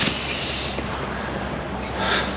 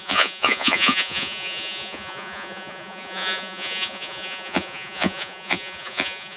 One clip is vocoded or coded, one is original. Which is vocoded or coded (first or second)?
second